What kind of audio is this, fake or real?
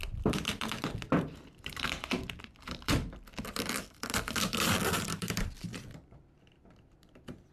fake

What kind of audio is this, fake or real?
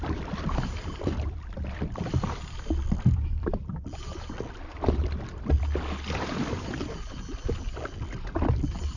fake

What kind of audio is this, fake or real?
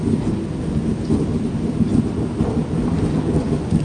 real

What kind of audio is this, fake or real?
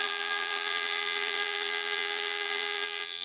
fake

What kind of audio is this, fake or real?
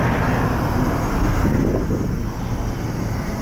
real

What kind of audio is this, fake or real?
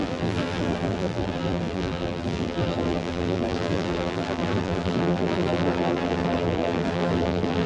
fake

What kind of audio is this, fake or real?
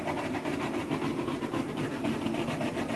fake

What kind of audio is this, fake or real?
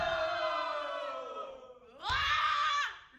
fake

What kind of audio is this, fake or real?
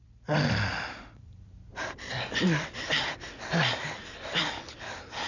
fake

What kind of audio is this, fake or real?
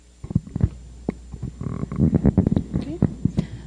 real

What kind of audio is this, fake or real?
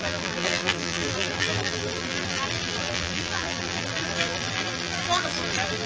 fake